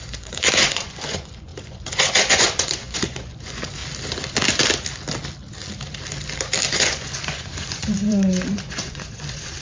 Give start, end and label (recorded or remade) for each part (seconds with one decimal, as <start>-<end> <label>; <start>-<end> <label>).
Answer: 0.0-3.8 remade; 3.8-6.7 recorded; 6.7-9.6 remade